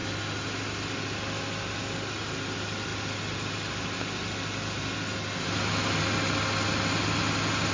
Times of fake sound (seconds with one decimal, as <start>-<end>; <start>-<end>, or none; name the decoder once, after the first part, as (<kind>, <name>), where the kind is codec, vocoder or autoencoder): none